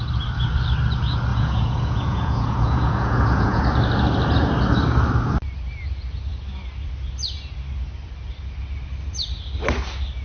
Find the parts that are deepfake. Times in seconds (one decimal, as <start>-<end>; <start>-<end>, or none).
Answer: 1.3-3.6

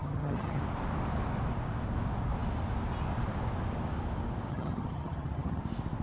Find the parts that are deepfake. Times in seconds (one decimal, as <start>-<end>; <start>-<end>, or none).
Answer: 0.0-0.6; 4.5-5.6

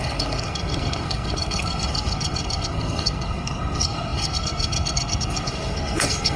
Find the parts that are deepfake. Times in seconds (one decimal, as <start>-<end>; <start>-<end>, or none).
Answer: 0.0-6.4

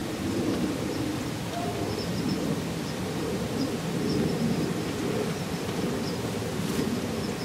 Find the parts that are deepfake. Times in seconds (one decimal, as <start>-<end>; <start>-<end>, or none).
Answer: 0.0-7.4

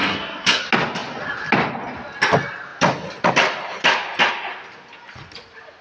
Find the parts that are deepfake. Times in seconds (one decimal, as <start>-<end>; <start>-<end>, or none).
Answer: 0.0-0.6

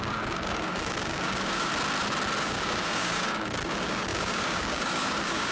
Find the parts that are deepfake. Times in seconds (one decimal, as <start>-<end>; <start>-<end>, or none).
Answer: 0.0-1.7; 2.4-5.5

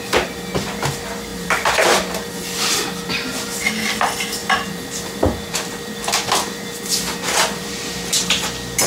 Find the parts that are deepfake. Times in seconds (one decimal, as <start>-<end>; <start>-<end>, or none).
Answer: 1.3-2.3; 4.4-6.1

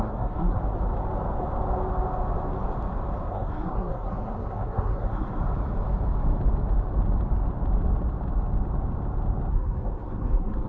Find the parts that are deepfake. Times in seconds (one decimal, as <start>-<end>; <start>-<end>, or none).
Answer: 0.0-0.6; 3.3-5.4; 9.5-10.7